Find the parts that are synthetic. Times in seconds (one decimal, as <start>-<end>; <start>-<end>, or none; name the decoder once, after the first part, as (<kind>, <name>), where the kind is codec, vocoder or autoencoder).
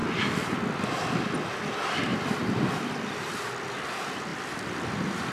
1.6-5.3 (vocoder, BigVGAN v2)